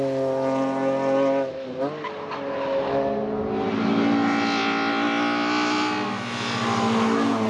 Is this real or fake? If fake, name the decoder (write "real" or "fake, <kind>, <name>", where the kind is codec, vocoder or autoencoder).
real